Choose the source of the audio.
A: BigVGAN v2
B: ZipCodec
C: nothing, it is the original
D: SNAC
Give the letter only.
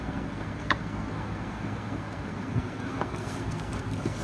D